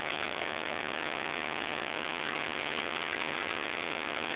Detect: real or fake fake